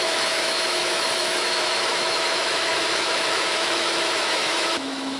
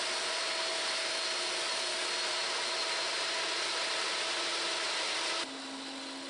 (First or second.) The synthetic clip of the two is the first